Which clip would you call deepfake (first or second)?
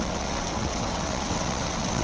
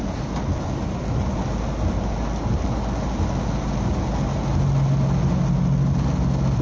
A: first